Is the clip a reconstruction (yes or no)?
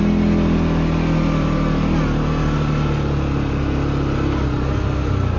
no